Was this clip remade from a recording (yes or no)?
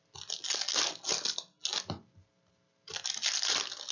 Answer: no